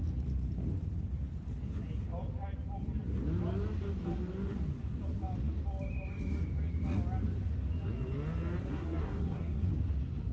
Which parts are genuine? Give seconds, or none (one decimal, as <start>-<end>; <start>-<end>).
0.0-8.6; 9.7-10.3